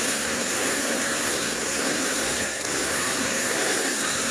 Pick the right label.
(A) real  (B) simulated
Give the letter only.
B